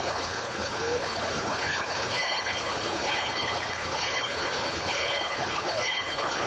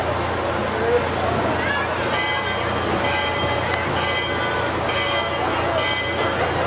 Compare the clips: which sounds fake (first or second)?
first